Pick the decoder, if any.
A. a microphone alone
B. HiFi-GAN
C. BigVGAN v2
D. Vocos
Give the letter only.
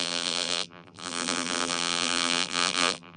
C